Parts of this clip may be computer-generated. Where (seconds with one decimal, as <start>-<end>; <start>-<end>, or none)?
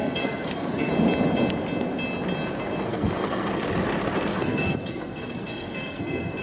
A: 0.0-0.9; 2.9-3.5; 4.3-6.4